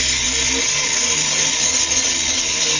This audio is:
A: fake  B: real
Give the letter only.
B